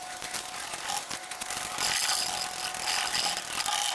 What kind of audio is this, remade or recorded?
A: recorded